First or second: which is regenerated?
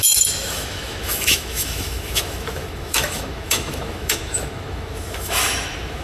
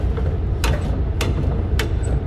first